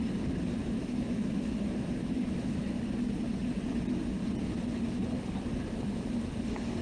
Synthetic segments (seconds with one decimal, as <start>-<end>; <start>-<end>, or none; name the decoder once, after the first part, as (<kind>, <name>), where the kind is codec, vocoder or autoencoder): 0.6-2.6 (autoencoder, DAC-VAE)